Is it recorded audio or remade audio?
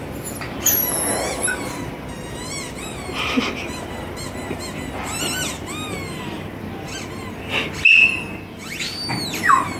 recorded